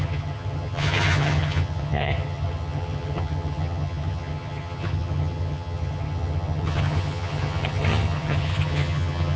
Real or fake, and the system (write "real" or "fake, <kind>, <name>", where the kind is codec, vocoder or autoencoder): fake, vocoder, HiFi-GAN